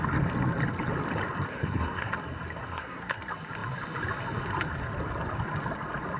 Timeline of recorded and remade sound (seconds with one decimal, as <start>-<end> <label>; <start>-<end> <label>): 0.0-1.5 recorded; 1.5-2.1 remade; 2.1-2.6 recorded; 2.6-3.2 remade; 3.2-6.2 recorded

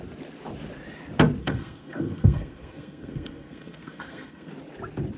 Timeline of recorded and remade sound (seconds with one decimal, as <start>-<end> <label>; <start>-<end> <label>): 0.0-1.4 recorded; 1.4-4.5 remade; 4.5-5.2 recorded